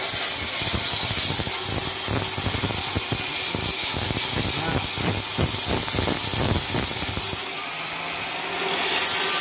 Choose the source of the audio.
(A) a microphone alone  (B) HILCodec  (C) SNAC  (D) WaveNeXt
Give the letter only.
A